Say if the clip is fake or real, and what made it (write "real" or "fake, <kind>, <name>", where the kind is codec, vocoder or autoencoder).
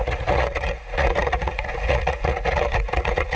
fake, vocoder, Vocos